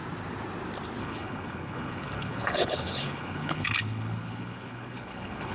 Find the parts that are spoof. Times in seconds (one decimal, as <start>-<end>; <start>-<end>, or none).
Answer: 1.0-5.5